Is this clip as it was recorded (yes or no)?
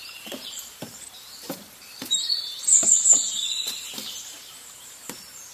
no